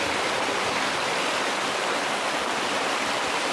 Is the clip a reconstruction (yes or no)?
no